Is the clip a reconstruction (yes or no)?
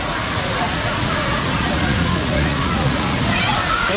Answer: yes